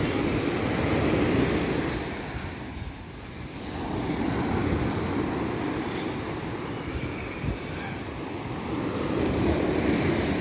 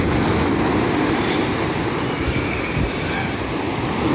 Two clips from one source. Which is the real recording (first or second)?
second